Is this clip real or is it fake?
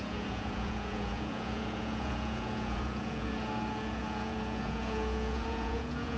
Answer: fake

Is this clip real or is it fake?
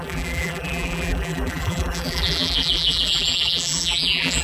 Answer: fake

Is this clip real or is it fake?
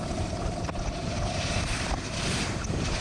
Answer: real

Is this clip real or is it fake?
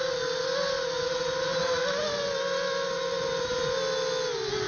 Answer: real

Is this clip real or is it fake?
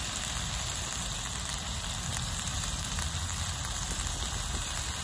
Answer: real